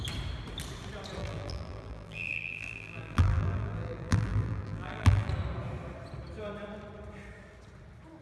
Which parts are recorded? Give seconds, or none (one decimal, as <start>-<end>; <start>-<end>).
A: 0.0-1.2; 5.3-8.2